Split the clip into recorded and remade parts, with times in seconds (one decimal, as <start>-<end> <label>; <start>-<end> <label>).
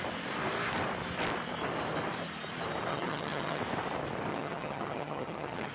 0.0-2.9 recorded; 2.9-3.6 remade; 3.6-4.3 recorded; 4.3-5.7 remade